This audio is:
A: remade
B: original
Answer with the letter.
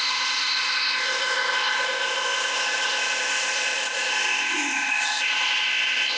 A